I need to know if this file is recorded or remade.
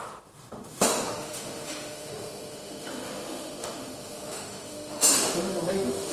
remade